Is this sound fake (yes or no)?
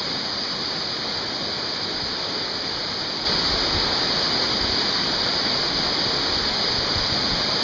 no